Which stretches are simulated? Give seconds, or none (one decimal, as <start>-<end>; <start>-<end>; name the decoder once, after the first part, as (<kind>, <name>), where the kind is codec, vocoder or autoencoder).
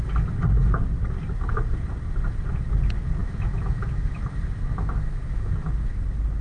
3.2-4.2 (autoencoder, DAC-VAE); 4.7-5.5